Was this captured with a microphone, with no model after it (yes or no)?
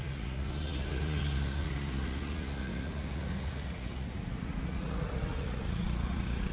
no